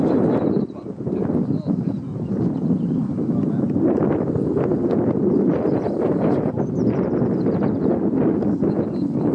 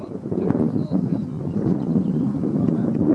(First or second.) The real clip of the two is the first